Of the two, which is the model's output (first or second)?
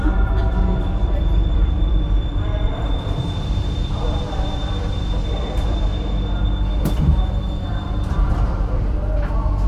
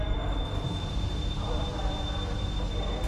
first